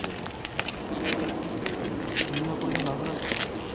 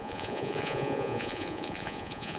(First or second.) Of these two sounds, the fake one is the second